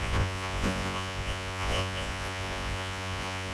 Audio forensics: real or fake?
fake